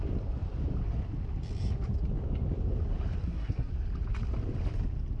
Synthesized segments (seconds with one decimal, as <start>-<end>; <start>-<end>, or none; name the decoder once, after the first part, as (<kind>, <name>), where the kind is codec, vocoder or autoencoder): 3.2-3.7 (codec, SNAC)